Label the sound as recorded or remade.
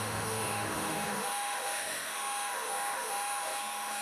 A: remade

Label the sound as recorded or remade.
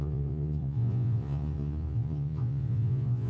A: remade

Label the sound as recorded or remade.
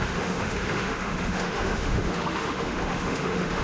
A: remade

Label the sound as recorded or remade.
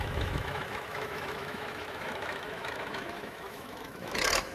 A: remade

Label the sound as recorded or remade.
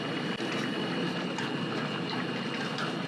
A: recorded